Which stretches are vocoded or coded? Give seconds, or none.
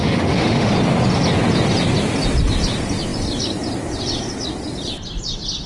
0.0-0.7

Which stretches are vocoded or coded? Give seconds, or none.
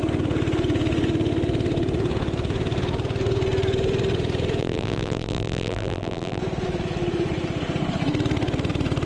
4.6-6.4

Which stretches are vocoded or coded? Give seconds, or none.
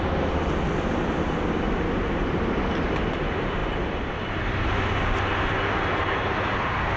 none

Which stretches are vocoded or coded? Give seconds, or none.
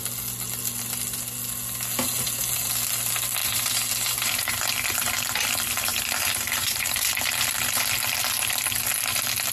3.4-5.1; 5.9-7.1